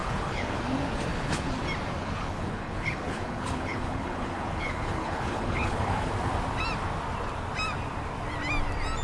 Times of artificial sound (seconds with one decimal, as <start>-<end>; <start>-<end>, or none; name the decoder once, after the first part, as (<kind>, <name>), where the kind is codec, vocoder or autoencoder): 0.0-0.6 (codec, HILCodec); 1.1-1.6; 2.0-6.1

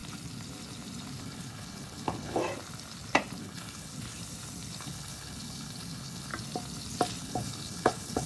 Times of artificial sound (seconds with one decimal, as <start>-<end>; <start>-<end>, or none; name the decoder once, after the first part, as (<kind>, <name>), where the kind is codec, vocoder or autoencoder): 1.2-2.4 (codec, HILCodec); 3.4-3.9; 4.8-6.3; 7.2-8.3

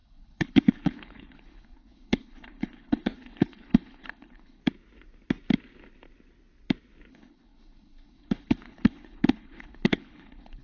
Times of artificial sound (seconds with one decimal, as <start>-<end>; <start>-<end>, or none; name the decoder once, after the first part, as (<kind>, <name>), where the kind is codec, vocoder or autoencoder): 0.0-4.6 (codec, HILCodec); 7.1-10.6

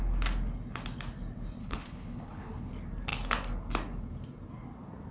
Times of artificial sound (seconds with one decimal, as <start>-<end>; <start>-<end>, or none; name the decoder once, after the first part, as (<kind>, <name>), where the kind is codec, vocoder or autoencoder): 1.6-2.7 (codec, HILCodec)

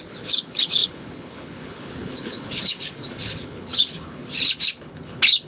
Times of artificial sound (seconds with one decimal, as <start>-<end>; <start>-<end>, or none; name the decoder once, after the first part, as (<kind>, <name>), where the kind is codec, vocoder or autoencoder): 0.0-5.5 (codec, HILCodec)

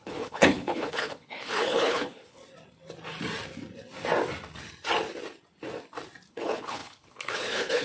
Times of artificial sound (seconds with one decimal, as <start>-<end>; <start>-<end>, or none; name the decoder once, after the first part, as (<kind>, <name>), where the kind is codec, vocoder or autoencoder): 0.0-2.4 (codec, HILCodec); 6.3-7.8